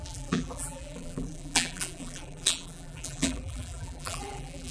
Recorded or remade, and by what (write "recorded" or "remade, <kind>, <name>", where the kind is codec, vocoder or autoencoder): remade, vocoder, BigVGAN v2